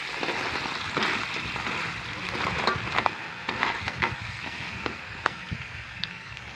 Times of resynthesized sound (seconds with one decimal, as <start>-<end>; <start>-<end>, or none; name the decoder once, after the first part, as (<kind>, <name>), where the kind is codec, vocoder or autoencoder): 2.9-6.6 (codec, SNAC)